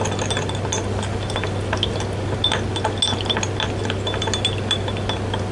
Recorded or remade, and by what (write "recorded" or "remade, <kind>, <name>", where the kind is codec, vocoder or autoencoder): recorded